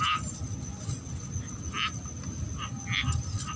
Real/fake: real